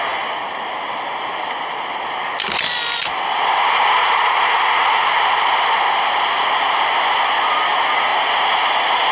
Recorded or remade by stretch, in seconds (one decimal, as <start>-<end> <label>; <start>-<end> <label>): 0.0-4.0 recorded; 4.0-5.1 remade; 5.1-9.1 recorded